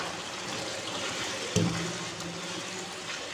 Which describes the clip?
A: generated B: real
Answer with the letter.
B